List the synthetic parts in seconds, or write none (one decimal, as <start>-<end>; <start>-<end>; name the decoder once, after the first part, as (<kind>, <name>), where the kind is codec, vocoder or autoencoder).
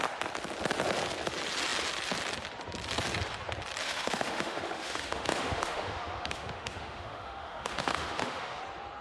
3.8-8.6 (autoencoder, DAC-VAE)